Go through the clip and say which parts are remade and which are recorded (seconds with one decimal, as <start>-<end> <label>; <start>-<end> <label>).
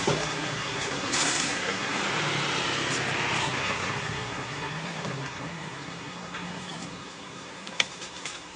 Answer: 0.0-2.0 remade; 2.0-3.4 recorded; 3.4-8.6 remade